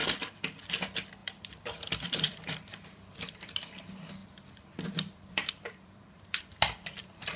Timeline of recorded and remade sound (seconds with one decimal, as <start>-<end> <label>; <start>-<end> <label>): 0.0-0.7 remade; 0.7-1.2 recorded; 1.2-3.2 remade; 3.2-4.2 recorded; 4.2-7.4 remade